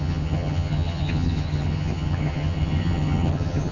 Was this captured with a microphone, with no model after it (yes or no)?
no